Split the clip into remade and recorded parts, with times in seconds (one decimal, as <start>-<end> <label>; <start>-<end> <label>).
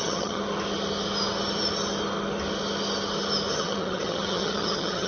0.0-0.4 remade; 0.4-3.5 recorded; 3.5-5.1 remade